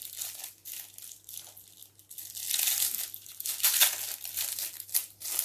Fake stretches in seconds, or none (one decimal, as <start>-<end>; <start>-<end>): none